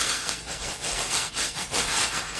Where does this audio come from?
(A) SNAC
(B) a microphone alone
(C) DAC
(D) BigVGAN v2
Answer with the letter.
A